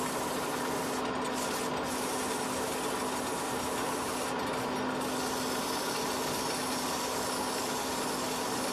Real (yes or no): yes